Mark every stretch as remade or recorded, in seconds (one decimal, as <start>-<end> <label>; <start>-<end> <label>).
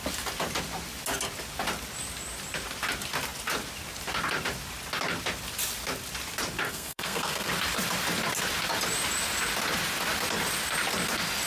0.0-6.7 recorded; 6.7-7.5 remade; 7.5-11.5 recorded